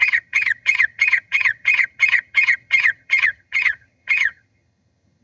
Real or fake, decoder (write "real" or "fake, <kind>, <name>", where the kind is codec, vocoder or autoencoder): fake, vocoder, HiFi-GAN